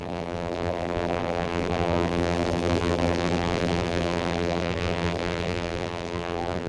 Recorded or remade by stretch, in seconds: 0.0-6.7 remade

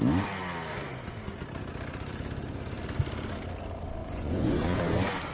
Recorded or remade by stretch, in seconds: 0.0-4.0 recorded; 4.0-4.8 remade; 4.8-5.3 recorded

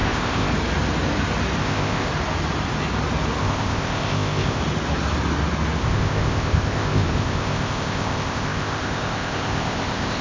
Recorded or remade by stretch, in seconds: 0.0-0.5 remade; 0.5-1.6 recorded; 1.6-2.1 remade; 2.1-3.4 recorded; 3.4-4.6 remade; 4.6-5.8 recorded; 5.8-10.2 remade

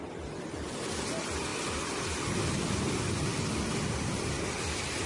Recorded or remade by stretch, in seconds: 0.0-5.1 recorded

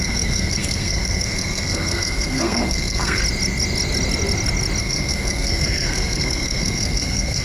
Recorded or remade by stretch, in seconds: 0.0-3.2 remade; 3.2-4.8 recorded; 4.8-7.4 remade